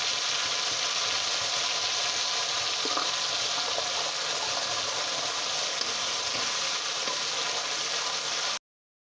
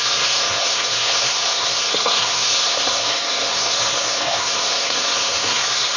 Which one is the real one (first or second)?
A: first